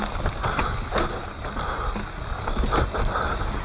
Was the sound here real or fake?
real